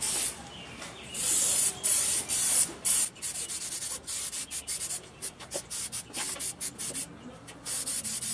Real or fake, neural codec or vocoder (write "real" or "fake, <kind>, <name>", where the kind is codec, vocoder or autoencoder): real